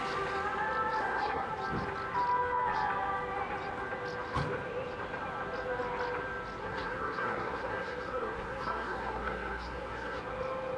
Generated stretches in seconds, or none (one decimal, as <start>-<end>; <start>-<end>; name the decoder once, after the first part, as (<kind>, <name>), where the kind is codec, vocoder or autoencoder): 1.0-1.5 (codec, SNAC); 6.6-10.2